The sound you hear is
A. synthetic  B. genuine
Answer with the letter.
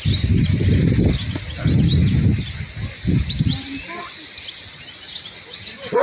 B